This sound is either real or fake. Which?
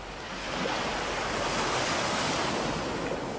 real